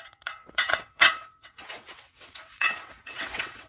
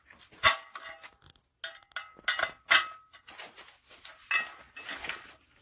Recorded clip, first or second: second